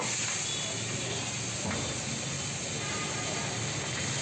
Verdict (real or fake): real